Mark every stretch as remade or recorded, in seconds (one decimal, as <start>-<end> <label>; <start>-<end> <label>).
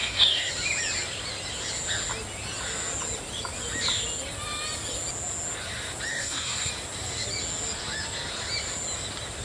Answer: 0.0-0.5 remade; 0.5-6.1 recorded; 6.1-6.7 remade; 6.7-9.4 recorded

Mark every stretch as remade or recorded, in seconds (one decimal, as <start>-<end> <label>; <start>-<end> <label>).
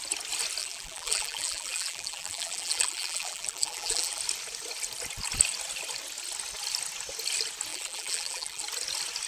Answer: 0.0-0.6 recorded; 0.6-4.2 remade; 4.2-7.7 recorded; 7.7-8.6 remade; 8.6-9.3 recorded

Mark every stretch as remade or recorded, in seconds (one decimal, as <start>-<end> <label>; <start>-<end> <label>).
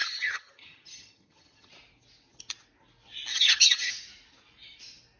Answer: 0.0-1.7 remade; 1.7-3.3 recorded; 3.3-3.9 remade; 3.9-5.2 recorded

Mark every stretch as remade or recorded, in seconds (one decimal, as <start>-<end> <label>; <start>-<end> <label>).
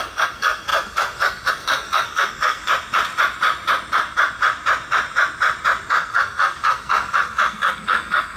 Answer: 0.0-2.7 remade; 2.7-5.9 recorded; 5.9-8.4 remade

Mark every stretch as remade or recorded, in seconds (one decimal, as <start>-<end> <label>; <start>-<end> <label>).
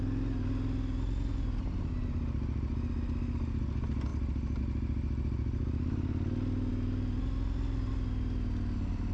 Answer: 0.0-4.1 recorded; 4.1-4.6 remade; 4.6-9.1 recorded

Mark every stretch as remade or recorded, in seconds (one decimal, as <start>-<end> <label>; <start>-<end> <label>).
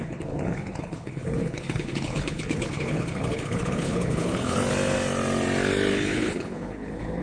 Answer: 0.0-4.6 remade; 4.6-5.9 recorded; 5.9-7.2 remade